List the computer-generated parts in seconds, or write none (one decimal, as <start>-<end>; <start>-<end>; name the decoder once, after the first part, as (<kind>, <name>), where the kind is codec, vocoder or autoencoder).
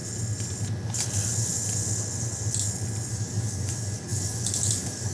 3.1-5.1 (codec, DAC)